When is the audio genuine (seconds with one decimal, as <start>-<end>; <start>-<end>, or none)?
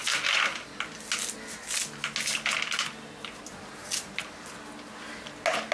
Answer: 0.0-5.7